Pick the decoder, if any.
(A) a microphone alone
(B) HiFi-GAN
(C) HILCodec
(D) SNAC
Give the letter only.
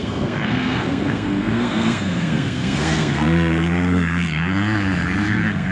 D